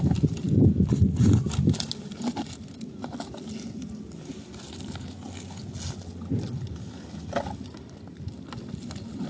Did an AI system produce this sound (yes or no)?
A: no